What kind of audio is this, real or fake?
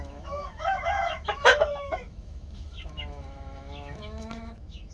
fake